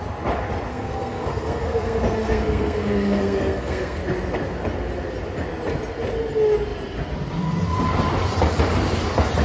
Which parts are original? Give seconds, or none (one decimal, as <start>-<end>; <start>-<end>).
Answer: 0.0-0.7; 4.0-9.4